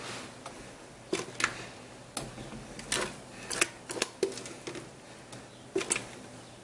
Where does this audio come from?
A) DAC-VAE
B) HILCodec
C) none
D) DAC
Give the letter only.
C